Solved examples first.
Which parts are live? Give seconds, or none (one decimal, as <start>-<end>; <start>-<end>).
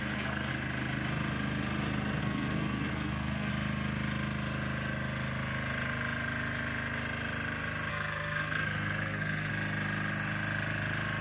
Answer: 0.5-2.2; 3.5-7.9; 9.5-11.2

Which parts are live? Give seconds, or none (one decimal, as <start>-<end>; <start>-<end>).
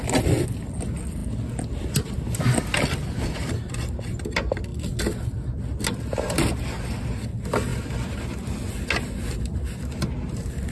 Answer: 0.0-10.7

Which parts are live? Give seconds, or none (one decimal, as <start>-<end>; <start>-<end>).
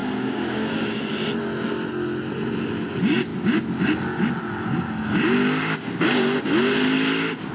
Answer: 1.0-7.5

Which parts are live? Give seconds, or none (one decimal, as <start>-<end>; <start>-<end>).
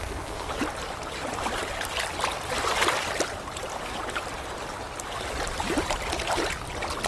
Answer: 0.5-7.1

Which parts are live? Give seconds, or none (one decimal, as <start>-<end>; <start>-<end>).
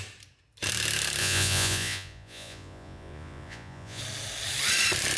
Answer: 0.0-1.2; 4.0-5.2